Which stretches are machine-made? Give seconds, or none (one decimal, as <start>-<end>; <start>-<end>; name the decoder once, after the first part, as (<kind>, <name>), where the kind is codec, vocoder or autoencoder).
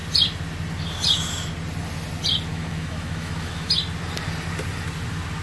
2.5-3.7 (autoencoder, DAC-VAE)